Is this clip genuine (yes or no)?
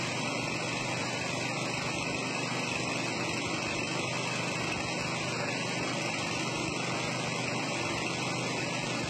yes